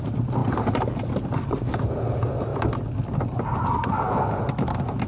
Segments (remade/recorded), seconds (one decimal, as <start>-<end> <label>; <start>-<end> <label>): 0.0-0.4 recorded; 0.4-1.9 remade; 1.9-5.1 recorded